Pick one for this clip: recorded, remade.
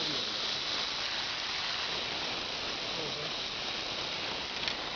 recorded